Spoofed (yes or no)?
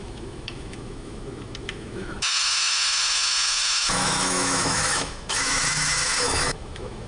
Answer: yes